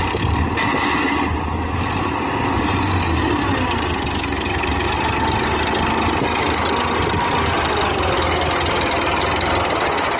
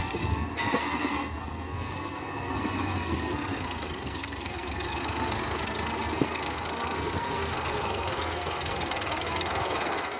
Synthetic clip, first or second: second